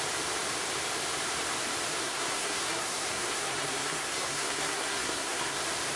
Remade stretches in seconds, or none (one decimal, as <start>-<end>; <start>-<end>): 2.0-5.6